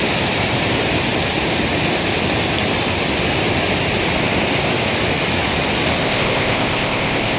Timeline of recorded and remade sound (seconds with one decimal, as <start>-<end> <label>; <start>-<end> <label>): 0.0-6.0 recorded; 6.0-7.4 remade